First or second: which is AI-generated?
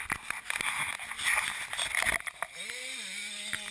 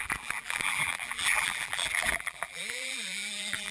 second